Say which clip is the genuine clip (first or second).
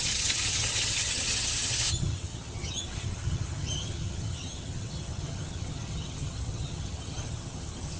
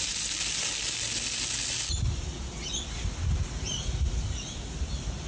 second